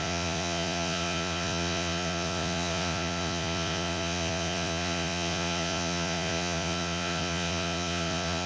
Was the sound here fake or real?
fake